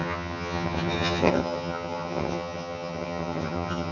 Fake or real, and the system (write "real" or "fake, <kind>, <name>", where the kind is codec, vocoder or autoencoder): fake, vocoder, HiFi-GAN